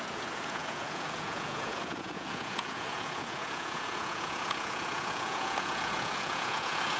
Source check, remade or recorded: remade